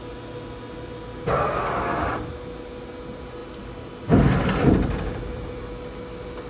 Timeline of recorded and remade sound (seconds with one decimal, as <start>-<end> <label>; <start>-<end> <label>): 0.0-3.4 recorded; 3.4-5.7 remade; 5.7-6.5 recorded